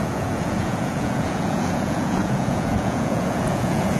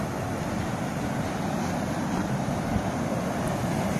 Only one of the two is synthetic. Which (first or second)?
first